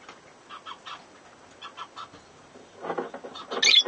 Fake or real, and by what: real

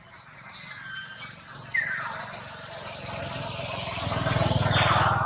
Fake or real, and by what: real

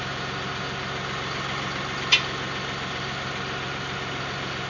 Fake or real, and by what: real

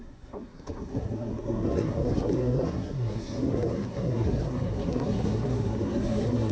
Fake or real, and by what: fake, codec, SNAC